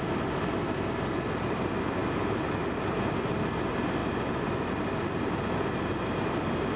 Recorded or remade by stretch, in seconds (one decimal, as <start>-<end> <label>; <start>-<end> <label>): 0.0-6.8 recorded